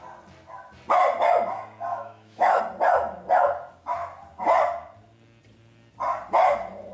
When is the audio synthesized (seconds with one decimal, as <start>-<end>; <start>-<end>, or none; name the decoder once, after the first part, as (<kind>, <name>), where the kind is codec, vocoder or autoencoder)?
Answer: 1.9-2.6 (autoencoder, DAC-VAE)